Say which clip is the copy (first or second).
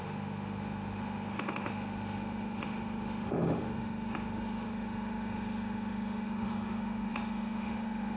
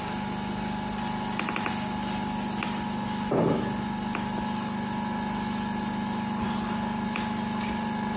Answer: first